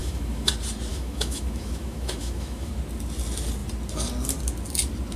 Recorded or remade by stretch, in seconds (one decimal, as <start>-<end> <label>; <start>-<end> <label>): 0.0-0.5 remade; 0.5-0.9 recorded; 0.9-2.7 remade; 2.7-5.2 recorded